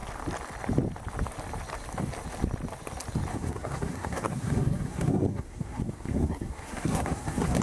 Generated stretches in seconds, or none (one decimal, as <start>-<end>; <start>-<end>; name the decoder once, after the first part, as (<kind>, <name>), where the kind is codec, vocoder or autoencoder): 3.3-7.6 (codec, SNAC)

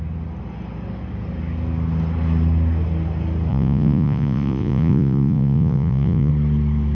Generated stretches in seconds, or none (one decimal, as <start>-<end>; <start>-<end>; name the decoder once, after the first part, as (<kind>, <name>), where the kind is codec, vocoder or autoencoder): 3.5-6.3 (vocoder, Vocos)

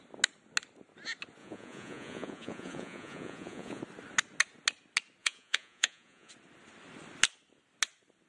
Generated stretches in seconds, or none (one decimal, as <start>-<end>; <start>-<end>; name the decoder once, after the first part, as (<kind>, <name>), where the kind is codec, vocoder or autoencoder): 1.4-3.8 (vocoder, Vocos); 5.2-6.3

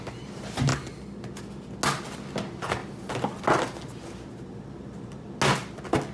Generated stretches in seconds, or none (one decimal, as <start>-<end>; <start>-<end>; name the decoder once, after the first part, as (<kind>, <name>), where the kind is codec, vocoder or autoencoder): none

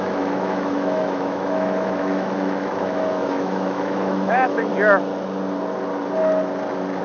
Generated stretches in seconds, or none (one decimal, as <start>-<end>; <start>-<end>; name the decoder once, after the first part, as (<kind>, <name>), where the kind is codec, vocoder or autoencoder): 0.0-4.7 (autoencoder, DAC-VAE)

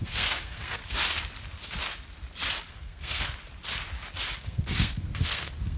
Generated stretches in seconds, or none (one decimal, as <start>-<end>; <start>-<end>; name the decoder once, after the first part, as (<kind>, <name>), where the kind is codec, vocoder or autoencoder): 0.0-0.8 (codec, SNAC); 2.7-3.4; 4.4-5.8

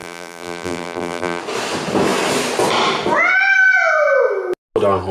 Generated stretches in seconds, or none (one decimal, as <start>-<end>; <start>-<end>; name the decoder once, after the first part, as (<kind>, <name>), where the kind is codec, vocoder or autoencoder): 0.0-1.4 (vocoder, BigVGAN v2)

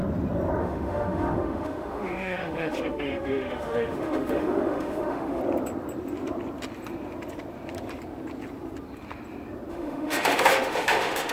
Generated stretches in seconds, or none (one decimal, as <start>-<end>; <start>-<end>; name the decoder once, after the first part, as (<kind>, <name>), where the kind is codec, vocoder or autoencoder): 0.6-5.4 (autoencoder, DAC-VAE); 9.7-11.3